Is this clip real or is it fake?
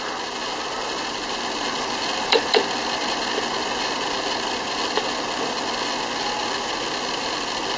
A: real